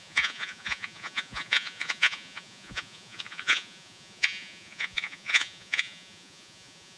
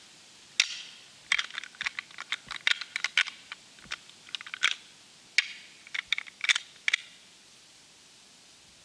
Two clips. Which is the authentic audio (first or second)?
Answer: second